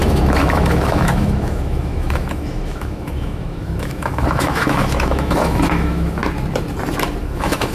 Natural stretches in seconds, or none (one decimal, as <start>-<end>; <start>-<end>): 6.2-7.2